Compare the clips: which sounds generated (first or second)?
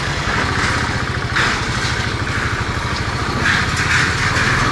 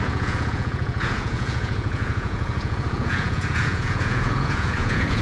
second